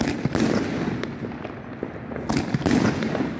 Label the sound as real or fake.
real